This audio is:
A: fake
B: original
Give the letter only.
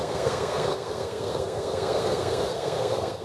A